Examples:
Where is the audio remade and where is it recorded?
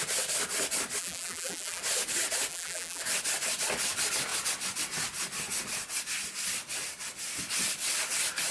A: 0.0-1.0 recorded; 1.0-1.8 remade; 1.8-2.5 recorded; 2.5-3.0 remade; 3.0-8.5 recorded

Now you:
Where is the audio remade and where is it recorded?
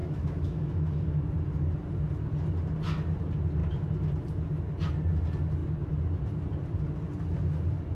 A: 0.0-1.2 remade; 1.2-7.9 recorded